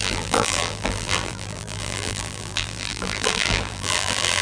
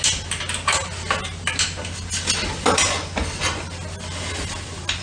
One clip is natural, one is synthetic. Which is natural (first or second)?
second